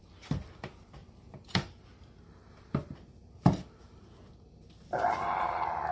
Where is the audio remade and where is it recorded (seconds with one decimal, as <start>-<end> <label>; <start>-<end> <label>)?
0.0-5.9 recorded